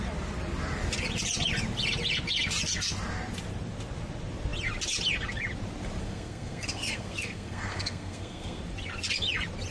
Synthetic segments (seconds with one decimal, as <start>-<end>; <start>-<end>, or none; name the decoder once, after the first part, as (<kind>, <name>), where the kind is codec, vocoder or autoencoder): 6.0-8.6 (codec, SNAC)